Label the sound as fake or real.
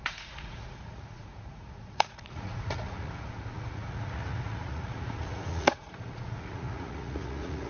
fake